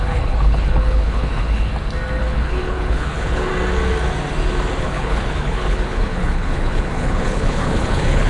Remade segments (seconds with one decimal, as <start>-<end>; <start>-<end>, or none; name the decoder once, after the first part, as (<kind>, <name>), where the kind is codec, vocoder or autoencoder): 0.0-1.7 (codec, HILCodec); 2.2-3.5; 4.8-8.3